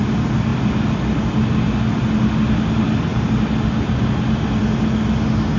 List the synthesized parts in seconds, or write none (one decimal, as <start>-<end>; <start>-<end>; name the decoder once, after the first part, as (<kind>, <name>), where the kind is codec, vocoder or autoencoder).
0.5-1.3 (vocoder, BigVGAN v2); 3.1-4.1